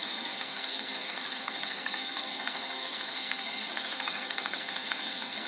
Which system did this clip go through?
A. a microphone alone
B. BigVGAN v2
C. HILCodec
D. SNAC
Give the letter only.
D